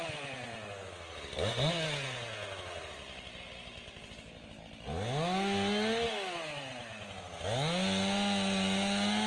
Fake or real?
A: real